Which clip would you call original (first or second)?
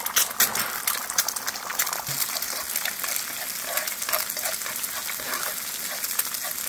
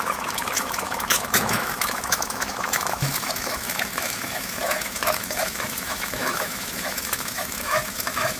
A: first